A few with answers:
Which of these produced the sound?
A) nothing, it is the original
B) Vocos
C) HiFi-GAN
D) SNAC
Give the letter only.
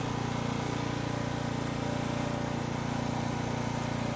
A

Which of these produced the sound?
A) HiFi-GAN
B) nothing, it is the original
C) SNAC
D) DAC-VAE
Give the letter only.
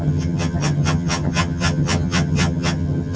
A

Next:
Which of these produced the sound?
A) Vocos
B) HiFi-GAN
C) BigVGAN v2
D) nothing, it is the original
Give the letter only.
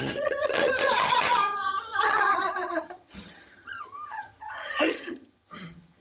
B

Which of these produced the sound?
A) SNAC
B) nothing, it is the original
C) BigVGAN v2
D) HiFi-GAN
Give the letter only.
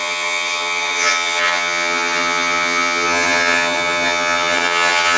D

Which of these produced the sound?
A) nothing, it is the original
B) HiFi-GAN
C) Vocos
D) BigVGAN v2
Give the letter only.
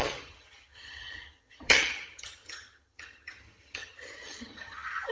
B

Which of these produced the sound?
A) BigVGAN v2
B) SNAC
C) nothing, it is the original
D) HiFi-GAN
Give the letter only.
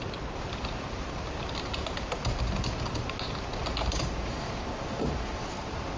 C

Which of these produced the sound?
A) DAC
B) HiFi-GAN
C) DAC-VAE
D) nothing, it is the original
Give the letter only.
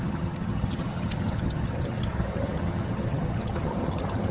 B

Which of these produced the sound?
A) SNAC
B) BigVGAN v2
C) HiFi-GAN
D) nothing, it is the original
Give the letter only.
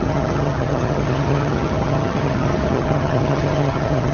C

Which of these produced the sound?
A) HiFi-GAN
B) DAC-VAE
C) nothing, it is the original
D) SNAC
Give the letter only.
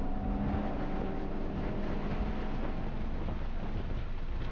C